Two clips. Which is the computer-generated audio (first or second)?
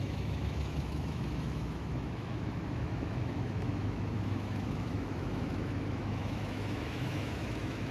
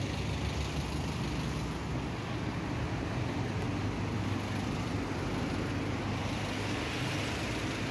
first